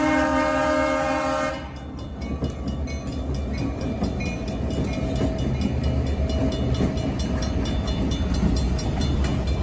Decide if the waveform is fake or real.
real